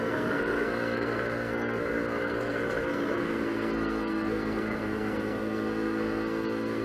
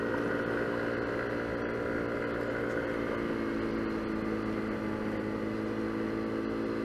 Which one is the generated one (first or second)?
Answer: first